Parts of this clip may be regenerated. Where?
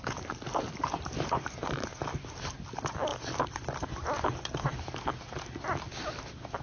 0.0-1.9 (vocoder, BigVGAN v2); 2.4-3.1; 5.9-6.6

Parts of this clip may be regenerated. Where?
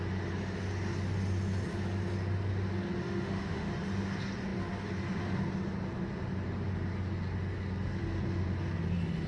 3.0-3.7 (autoencoder, DAC-VAE)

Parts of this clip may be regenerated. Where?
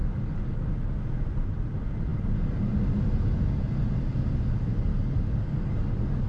0.0-0.7 (codec, DAC); 4.9-6.3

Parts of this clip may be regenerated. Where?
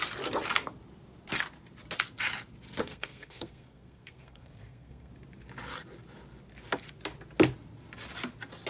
2.8-5.1 (codec, SNAC)